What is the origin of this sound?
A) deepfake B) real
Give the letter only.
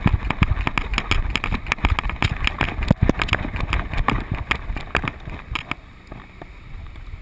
B